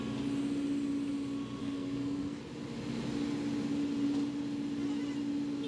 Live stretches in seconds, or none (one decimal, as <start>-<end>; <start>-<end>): 0.0-1.6; 2.4-5.7

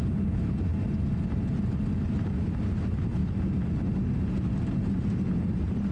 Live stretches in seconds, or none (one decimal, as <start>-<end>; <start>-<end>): 0.0-5.9

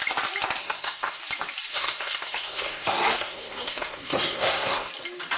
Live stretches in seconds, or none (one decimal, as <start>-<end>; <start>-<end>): 0.0-0.6; 1.2-1.7; 4.9-5.4

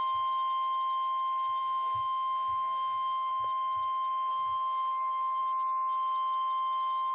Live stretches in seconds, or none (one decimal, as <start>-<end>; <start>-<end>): 0.0-1.6; 3.3-4.3; 5.4-7.1

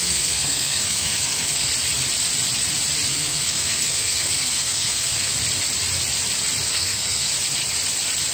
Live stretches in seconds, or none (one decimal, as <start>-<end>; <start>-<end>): 1.7-3.1; 5.3-6.7; 7.3-8.3

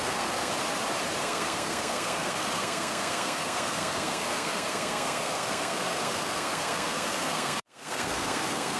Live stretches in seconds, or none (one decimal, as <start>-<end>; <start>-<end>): 0.5-1.2